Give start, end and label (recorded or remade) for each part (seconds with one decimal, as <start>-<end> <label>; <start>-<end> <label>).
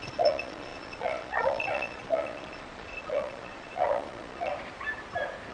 0.0-4.5 remade; 4.5-5.5 recorded